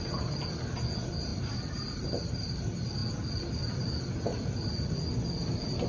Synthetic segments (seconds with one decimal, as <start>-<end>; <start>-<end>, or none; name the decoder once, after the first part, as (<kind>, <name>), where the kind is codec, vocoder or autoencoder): 1.3-2.6 (vocoder, BigVGAN v2); 4.3-4.9